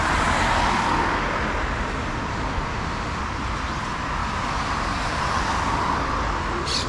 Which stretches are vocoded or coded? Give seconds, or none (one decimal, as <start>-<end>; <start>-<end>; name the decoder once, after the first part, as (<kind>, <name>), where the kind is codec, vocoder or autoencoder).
2.3-3.2 (autoencoder, DAC-VAE)